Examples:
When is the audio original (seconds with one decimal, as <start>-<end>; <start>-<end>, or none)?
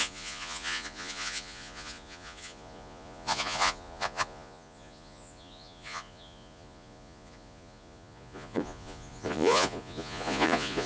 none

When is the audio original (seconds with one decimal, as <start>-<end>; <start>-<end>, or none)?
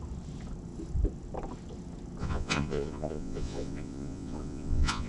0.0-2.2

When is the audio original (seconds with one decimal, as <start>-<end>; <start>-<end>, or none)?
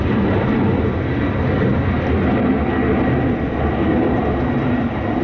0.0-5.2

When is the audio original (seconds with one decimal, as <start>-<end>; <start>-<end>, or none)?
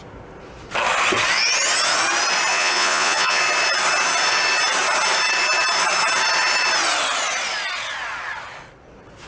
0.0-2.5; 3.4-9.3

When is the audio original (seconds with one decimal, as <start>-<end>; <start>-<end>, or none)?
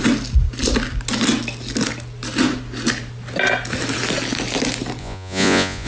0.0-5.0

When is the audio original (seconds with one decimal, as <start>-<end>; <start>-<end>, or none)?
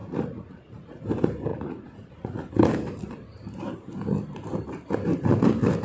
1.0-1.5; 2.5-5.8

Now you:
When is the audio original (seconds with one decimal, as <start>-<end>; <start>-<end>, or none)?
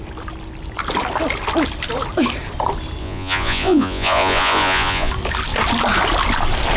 0.0-3.0; 5.1-6.8